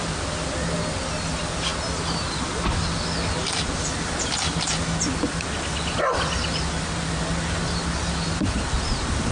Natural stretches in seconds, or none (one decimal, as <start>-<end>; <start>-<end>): 0.0-9.3